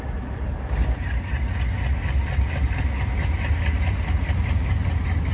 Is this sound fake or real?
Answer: real